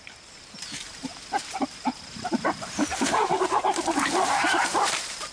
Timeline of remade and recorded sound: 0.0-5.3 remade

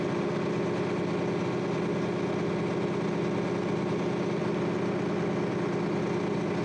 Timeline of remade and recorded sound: 0.0-6.6 recorded